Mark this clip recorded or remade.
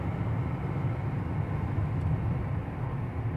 recorded